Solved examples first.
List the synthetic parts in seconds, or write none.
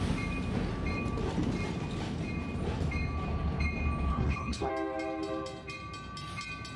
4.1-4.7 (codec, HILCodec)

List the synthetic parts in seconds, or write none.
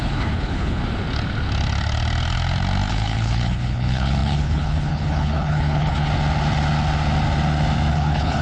0.0-0.8 (codec, HILCodec); 2.9-6.1; 7.9-8.4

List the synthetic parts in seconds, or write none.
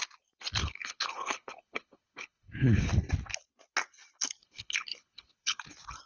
0.6-2.9 (codec, HILCodec); 4.4-5.6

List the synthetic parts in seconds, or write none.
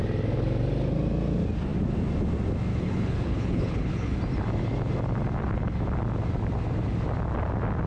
2.7-4.2 (codec, HILCodec)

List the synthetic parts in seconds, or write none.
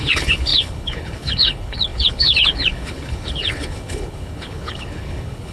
0.0-5.5 (codec, HILCodec)